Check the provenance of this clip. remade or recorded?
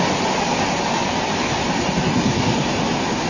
recorded